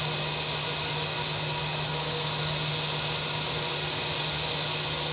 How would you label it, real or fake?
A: real